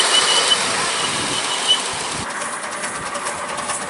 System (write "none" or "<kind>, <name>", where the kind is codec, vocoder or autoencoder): none